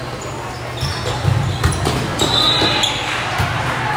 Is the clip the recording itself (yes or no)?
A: yes